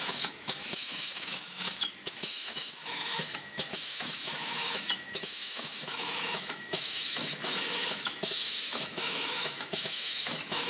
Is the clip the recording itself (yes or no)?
no